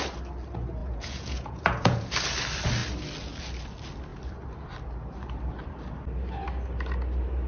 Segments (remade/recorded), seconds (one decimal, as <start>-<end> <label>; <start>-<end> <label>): 0.0-0.8 recorded; 0.8-2.1 remade; 2.1-7.5 recorded